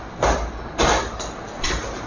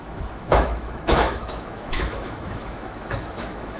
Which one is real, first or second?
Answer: first